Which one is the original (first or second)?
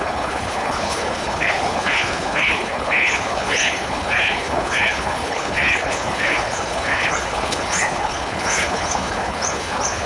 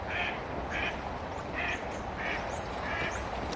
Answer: second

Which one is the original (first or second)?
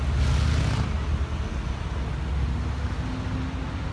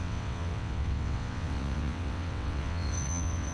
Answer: first